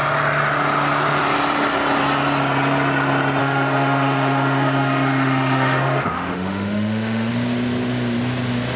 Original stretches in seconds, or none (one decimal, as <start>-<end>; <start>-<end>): 0.0-3.4; 7.3-8.8